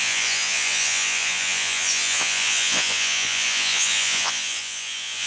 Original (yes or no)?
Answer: no